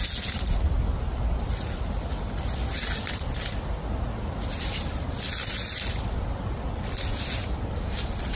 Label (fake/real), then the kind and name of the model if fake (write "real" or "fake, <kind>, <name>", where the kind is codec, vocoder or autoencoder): real